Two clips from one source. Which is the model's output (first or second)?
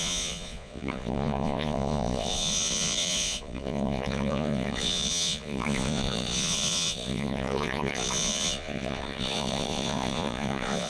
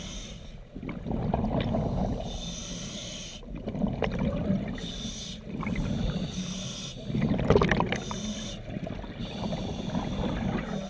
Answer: first